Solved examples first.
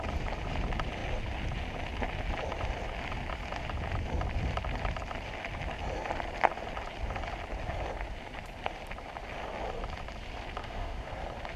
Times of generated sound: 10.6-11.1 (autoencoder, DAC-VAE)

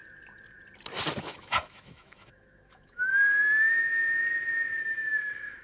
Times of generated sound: 1.2-3.1 (autoencoder, DAC-VAE); 4.8-5.6

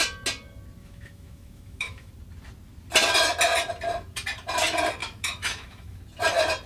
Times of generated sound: 0.8-2.1 (autoencoder, DAC-VAE); 5.0-6.0